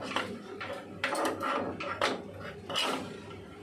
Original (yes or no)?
yes